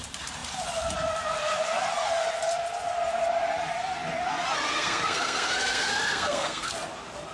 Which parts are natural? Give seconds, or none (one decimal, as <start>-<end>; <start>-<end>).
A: 0.0-4.7; 6.7-7.3